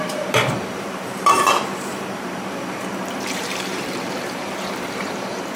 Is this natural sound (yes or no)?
no